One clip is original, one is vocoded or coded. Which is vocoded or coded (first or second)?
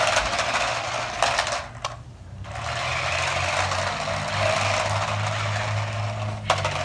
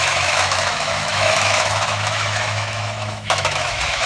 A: second